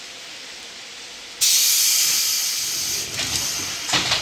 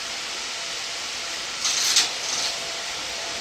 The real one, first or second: first